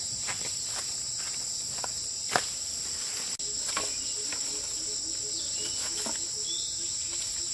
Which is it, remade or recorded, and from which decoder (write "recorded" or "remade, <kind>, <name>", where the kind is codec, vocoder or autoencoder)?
recorded